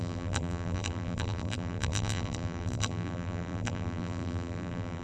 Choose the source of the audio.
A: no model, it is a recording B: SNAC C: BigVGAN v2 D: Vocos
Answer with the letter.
C